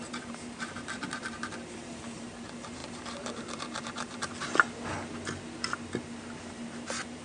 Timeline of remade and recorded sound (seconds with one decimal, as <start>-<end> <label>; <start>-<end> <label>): 0.0-4.2 remade; 4.2-6.5 recorded; 6.5-7.2 remade